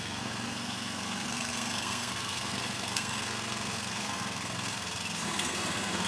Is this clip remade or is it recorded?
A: remade